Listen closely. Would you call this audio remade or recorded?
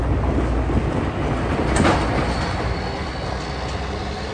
recorded